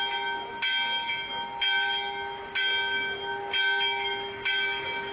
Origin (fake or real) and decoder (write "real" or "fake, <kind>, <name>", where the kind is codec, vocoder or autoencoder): real